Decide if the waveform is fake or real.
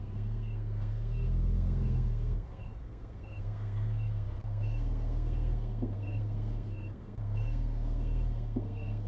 fake